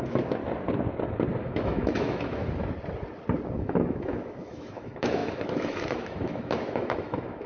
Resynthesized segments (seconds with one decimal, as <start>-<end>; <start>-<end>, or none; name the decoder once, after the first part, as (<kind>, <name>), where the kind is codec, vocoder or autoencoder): 0.0-0.4 (autoencoder, DAC-VAE); 1.4-2.4; 3.6-7.5